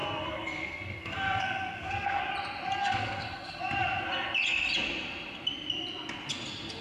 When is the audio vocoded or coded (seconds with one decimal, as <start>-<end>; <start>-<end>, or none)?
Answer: 0.0-2.2; 2.8-3.6